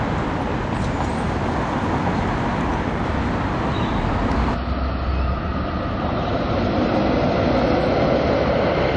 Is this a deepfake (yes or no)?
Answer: no